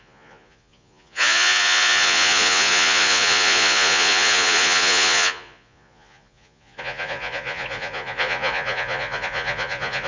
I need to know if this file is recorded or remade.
remade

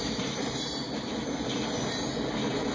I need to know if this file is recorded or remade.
recorded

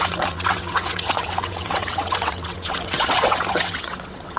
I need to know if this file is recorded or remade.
remade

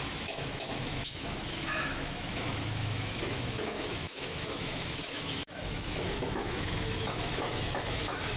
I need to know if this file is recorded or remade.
remade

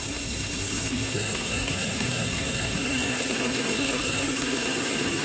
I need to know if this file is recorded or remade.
remade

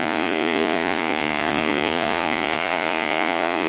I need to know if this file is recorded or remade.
remade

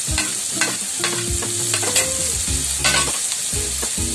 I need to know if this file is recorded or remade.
recorded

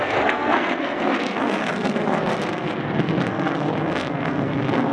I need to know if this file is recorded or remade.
remade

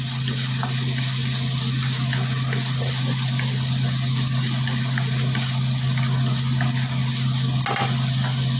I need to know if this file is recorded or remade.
recorded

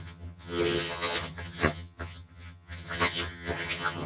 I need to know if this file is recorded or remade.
remade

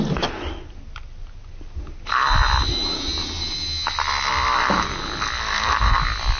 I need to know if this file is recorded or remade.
recorded